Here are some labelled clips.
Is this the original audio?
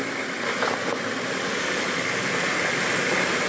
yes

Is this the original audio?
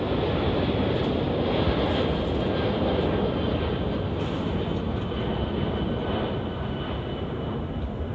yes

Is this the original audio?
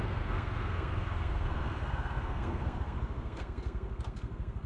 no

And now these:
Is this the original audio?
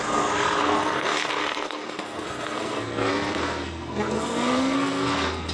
no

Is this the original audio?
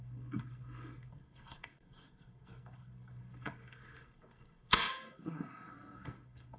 no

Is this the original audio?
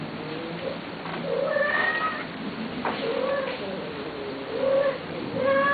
yes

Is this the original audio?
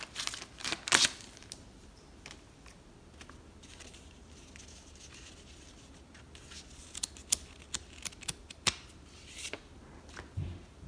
yes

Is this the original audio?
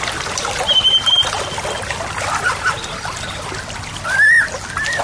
yes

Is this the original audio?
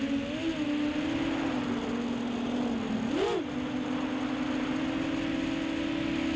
yes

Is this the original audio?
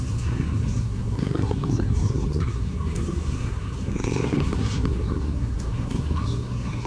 no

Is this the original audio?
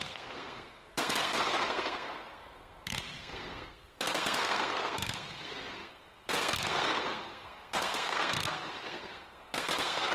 no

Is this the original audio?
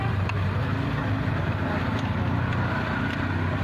yes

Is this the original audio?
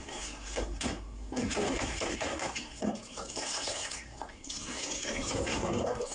no